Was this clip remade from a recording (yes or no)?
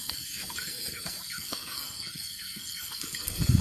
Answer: yes